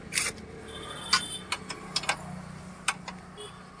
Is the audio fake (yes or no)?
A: no